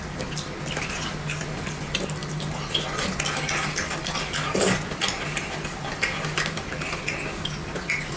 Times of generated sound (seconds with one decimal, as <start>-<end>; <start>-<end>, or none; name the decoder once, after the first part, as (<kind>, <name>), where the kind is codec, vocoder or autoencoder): none